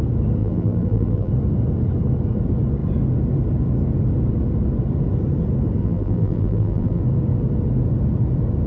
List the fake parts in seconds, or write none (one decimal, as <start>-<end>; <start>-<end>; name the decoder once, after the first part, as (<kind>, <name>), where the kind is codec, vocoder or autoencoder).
0.4-1.3 (vocoder, BigVGAN v2); 5.8-7.0